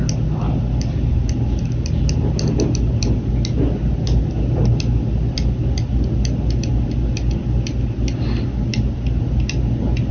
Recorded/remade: recorded